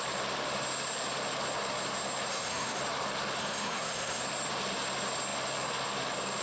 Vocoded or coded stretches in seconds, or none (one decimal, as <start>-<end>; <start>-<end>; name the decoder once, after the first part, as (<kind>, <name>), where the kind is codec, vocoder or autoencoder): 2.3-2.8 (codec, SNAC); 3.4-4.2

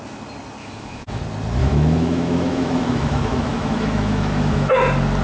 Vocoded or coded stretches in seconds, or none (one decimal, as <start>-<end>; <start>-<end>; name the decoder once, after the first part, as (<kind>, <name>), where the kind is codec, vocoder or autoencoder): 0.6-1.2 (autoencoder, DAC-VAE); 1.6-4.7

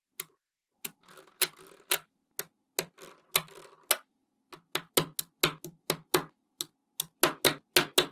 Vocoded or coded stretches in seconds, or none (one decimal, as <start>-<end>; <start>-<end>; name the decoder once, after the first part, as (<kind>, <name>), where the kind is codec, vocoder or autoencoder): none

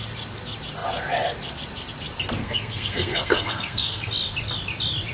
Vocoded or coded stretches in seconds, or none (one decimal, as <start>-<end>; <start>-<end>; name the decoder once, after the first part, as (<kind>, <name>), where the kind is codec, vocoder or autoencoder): 2.4-4.1 (codec, SNAC)